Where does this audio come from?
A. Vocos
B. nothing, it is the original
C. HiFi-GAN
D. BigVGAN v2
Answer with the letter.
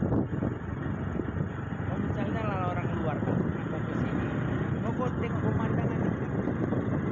B